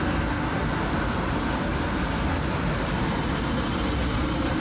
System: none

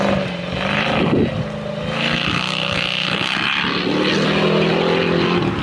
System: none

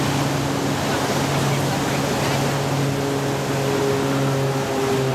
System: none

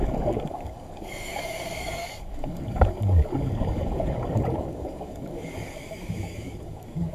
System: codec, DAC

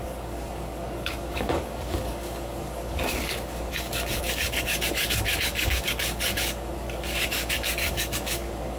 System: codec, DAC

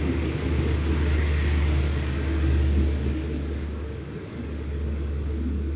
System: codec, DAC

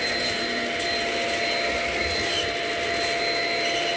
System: none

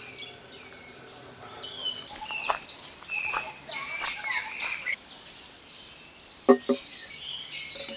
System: none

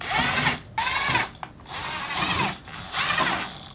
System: none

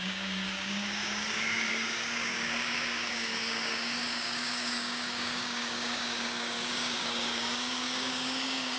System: codec, DAC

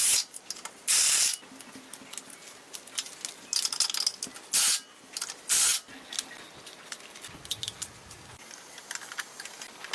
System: none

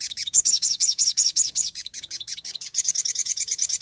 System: codec, DAC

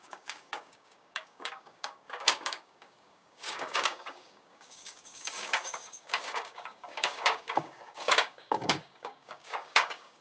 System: codec, DAC